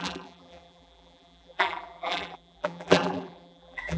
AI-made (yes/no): yes